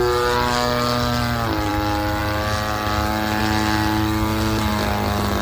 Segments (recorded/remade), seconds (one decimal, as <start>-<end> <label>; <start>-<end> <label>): 0.0-5.4 recorded